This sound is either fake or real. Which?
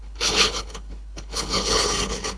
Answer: fake